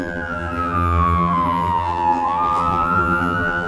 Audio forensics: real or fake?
fake